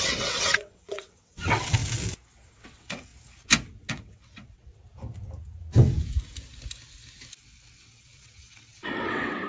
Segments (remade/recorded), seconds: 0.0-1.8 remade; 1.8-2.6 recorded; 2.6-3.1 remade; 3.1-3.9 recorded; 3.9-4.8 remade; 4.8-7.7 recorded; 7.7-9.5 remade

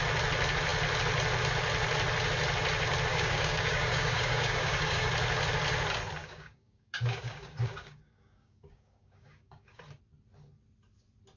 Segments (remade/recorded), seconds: 0.0-3.1 recorded; 3.1-5.1 remade; 5.1-6.2 recorded; 6.2-9.8 remade; 9.8-11.4 recorded

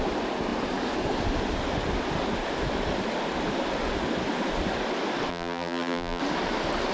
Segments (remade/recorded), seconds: 0.0-5.3 recorded; 5.3-6.2 remade; 6.2-6.9 recorded

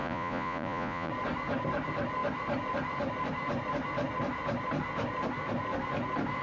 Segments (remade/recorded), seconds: 0.0-1.1 remade; 1.1-6.4 recorded

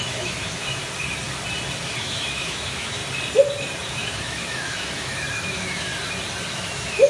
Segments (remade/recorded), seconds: 0.0-0.8 remade; 0.8-2.0 recorded; 2.0-3.0 remade; 3.0-3.9 recorded; 3.9-5.9 remade; 5.9-6.5 recorded; 6.5-7.1 remade

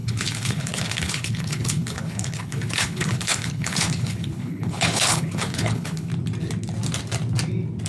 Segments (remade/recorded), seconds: 0.0-6.1 remade; 6.1-7.9 recorded

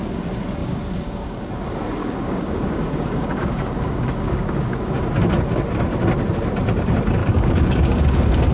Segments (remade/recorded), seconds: 0.0-0.6 recorded; 0.6-1.5 remade; 1.5-2.0 recorded; 2.0-5.0 remade; 5.0-7.2 recorded; 7.2-8.5 remade